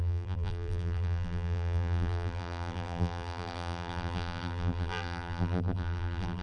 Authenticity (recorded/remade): remade